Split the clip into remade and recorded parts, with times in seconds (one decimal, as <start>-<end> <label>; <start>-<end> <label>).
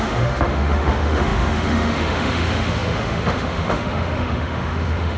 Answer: 0.0-5.2 remade